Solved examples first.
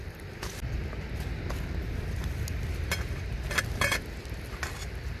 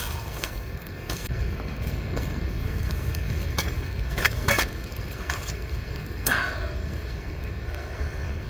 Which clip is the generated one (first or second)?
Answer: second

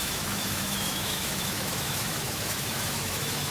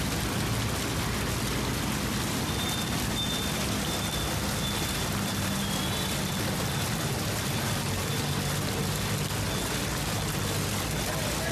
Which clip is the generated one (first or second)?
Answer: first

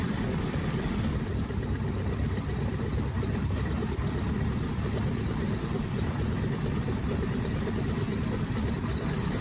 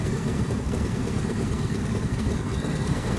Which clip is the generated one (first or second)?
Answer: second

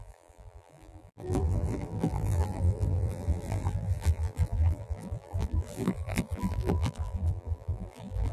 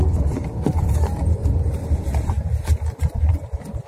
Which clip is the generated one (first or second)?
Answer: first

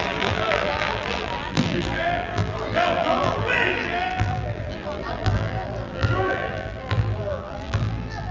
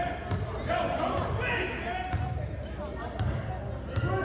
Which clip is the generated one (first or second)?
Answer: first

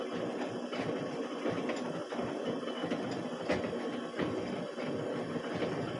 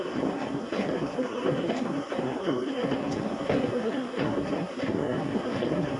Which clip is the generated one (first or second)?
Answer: second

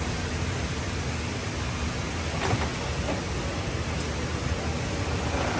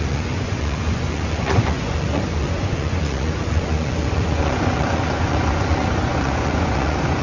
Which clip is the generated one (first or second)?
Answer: second